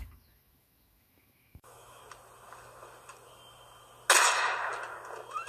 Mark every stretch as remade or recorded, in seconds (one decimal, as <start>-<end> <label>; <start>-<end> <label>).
0.0-2.0 remade; 2.0-5.5 recorded